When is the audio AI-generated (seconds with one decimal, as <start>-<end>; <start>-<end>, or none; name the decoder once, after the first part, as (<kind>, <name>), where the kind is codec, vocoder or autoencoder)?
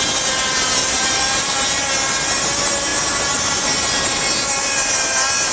0.8-1.8 (vocoder, BigVGAN v2)